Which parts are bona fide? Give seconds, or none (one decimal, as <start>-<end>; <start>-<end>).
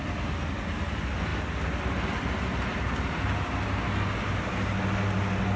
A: 0.0-5.6